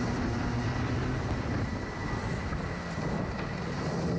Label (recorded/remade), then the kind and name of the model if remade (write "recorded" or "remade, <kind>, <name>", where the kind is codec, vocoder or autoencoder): recorded